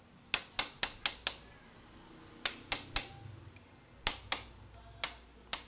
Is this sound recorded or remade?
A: recorded